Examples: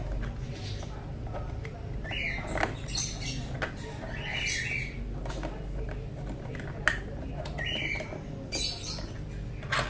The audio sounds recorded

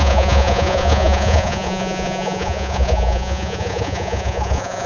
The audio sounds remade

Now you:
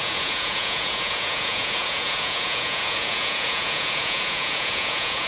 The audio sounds remade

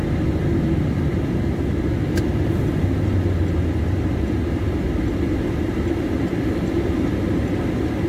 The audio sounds recorded